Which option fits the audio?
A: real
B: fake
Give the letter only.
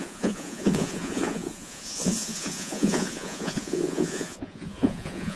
B